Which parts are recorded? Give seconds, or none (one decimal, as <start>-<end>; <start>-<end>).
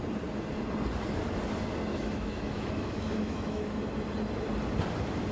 0.0-1.9; 3.8-5.3